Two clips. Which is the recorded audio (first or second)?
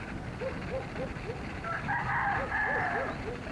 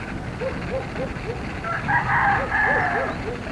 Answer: second